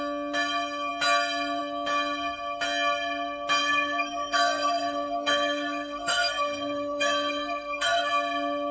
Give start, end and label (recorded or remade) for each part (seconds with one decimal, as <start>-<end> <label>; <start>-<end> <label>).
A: 0.0-3.6 recorded; 3.6-8.1 remade; 8.1-8.7 recorded